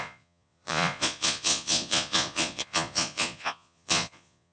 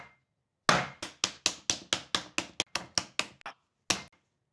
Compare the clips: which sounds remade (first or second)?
first